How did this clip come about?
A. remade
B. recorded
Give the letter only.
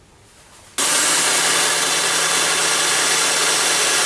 B